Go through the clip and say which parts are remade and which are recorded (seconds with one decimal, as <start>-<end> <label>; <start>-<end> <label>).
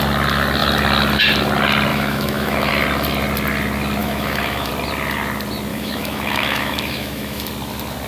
0.0-1.9 recorded; 1.9-2.7 remade; 2.7-4.0 recorded; 4.0-4.7 remade; 4.7-5.7 recorded; 5.7-7.5 remade; 7.5-8.1 recorded